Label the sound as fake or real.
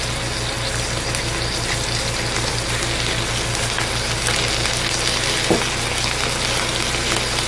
real